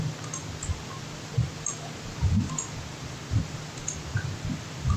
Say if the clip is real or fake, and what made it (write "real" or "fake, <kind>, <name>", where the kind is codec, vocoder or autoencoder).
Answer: real